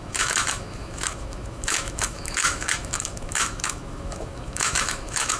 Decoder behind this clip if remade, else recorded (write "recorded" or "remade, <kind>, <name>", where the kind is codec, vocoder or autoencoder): remade, autoencoder, DAC-VAE